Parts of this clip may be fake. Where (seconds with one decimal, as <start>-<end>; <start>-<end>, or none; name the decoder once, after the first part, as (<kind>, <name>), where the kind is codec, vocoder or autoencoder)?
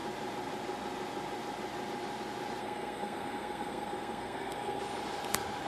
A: 2.6-4.8 (codec, SNAC)